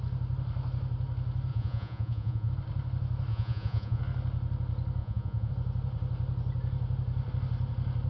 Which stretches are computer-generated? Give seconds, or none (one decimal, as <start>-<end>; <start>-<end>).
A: 1.5-2.5; 3.3-4.0; 5.0-5.5